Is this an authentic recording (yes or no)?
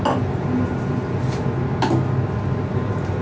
yes